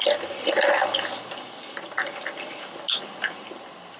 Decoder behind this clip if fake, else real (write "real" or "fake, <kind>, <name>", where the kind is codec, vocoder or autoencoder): real